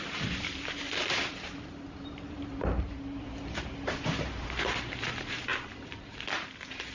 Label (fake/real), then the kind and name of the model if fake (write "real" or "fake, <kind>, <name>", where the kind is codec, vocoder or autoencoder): fake, vocoder, BigVGAN v2